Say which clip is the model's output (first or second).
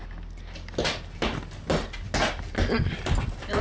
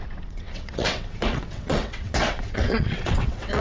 second